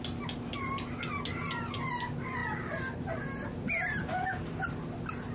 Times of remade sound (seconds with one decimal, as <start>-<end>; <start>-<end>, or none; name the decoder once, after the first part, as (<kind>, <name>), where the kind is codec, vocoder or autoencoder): none